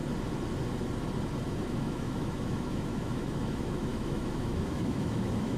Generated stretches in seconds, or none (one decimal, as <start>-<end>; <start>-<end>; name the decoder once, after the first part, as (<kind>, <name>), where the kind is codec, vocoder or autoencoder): 1.6-5.6 (autoencoder, DAC-VAE)